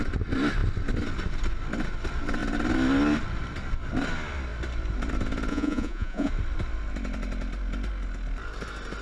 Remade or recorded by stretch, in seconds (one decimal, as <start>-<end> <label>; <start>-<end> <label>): 0.0-5.5 recorded; 5.5-6.3 remade; 6.3-9.0 recorded